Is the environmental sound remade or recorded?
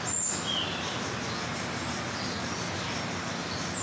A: recorded